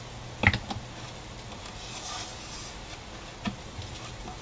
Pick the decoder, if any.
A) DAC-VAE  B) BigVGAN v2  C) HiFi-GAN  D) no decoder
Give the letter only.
D